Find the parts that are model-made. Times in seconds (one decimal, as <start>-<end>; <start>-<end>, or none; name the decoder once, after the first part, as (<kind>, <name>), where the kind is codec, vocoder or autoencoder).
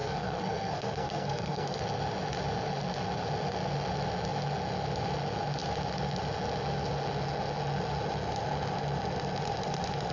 0.0-1.8 (codec, SNAC)